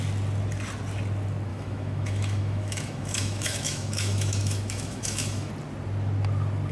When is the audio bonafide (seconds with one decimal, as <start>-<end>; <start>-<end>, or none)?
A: 0.0-1.5; 5.5-6.7

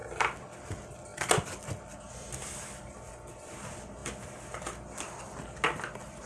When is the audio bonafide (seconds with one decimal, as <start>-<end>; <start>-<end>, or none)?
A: 0.0-6.3